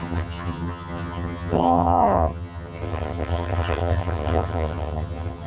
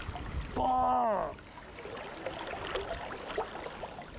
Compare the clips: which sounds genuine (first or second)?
second